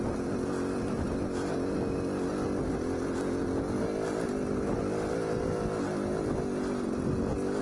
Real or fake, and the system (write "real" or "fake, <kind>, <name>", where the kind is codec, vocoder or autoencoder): real